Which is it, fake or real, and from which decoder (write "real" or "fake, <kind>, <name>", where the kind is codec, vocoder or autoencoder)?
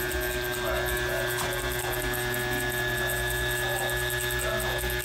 real